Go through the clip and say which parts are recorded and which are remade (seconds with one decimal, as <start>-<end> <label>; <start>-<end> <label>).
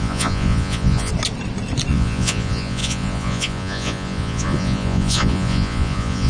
0.0-1.1 remade; 1.1-1.9 recorded; 1.9-6.3 remade